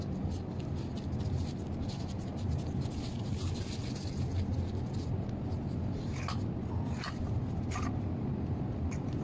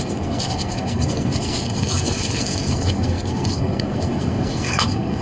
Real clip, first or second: first